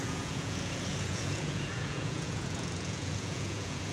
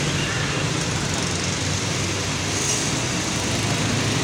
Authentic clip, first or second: second